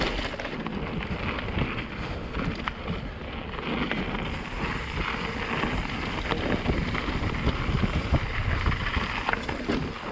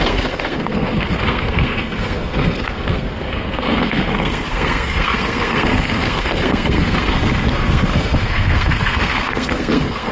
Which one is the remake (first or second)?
second